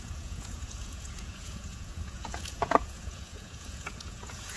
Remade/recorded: remade